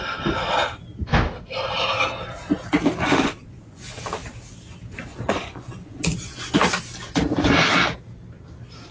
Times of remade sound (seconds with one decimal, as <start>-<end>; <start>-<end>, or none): 3.0-4.0; 5.1-6.5